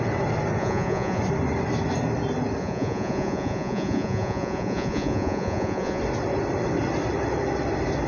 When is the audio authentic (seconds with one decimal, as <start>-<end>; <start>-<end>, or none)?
0.0-0.6; 1.2-2.6; 6.0-8.1